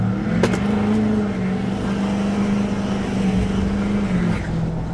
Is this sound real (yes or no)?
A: yes